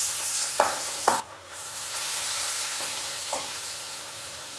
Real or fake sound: fake